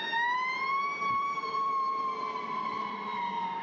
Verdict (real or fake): fake